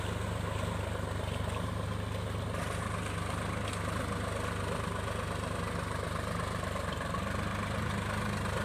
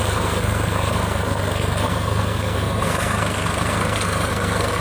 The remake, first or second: second